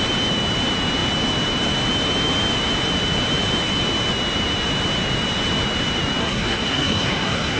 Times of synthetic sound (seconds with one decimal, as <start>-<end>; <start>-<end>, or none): 6.2-7.6